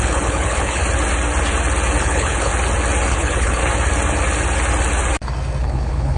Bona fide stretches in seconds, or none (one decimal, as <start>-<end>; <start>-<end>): 0.8-2.0; 2.5-3.1; 3.6-5.6